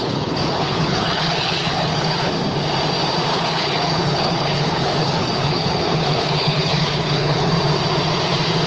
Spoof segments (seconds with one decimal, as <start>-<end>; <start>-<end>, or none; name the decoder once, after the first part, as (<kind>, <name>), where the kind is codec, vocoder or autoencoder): 0.0-2.3 (codec, HILCodec); 3.3-7.5

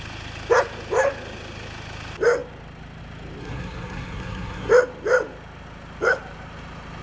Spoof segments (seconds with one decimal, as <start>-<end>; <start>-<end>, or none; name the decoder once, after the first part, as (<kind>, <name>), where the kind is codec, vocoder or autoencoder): 3.4-4.7 (codec, SNAC)

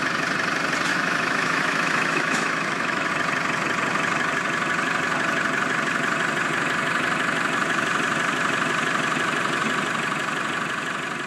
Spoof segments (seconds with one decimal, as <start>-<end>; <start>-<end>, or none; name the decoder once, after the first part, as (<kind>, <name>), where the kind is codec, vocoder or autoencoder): 0.9-3.1 (autoencoder, DAC-VAE)

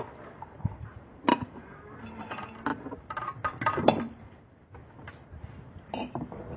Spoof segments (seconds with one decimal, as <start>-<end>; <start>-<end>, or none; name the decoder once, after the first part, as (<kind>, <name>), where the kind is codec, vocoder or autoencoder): 1.3-1.8 (vocoder, Vocos)

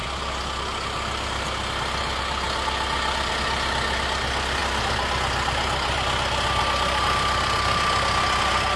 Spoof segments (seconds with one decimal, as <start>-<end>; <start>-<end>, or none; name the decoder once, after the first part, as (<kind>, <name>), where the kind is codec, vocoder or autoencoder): none

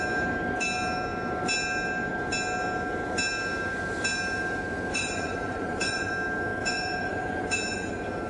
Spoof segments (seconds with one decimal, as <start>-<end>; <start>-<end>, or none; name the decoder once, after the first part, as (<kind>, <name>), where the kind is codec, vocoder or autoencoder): 4.9-6.1 (vocoder, Vocos); 6.6-7.9

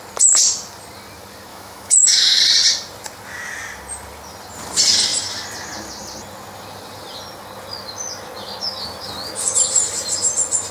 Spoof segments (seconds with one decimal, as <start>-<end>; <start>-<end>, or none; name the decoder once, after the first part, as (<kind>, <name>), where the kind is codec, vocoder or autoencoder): 1.5-2.4 (autoencoder, DAC-VAE)

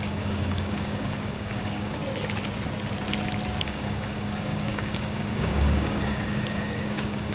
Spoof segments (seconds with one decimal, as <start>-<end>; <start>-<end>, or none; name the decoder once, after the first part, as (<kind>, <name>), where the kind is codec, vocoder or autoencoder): 0.0-2.0 (codec, DAC); 3.6-7.3